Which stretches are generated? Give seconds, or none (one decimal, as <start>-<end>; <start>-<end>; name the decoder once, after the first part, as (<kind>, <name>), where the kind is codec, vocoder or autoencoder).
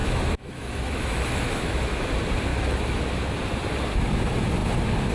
0.0-2.1 (autoencoder, DAC-VAE); 2.5-3.0